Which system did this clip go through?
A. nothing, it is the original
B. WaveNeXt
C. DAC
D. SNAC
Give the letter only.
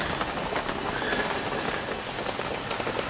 A